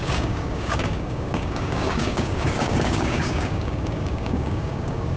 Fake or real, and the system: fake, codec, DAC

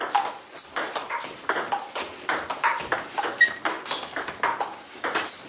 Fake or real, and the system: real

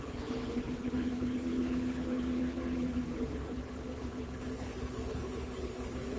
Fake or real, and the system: fake, codec, HILCodec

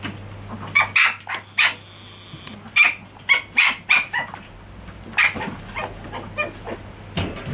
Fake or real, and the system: real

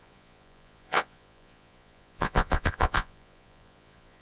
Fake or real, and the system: fake, vocoder, Vocos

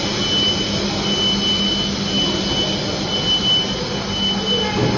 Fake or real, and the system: real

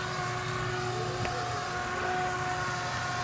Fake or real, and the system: real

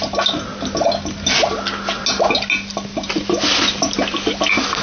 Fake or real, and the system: real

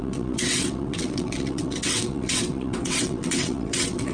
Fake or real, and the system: fake, vocoder, WaveNeXt